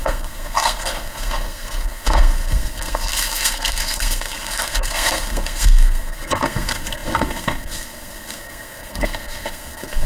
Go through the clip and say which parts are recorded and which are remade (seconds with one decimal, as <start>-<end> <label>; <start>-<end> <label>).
0.0-10.1 remade